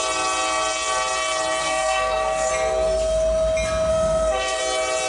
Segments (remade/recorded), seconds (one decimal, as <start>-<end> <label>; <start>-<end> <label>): 0.0-1.6 recorded; 1.6-2.5 remade; 2.5-3.9 recorded; 3.9-4.6 remade; 4.6-5.1 recorded